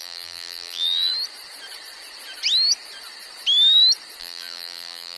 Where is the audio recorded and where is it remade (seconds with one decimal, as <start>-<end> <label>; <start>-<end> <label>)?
0.0-1.1 remade; 1.1-4.2 recorded; 4.2-5.2 remade